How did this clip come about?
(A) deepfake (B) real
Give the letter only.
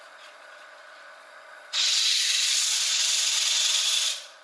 A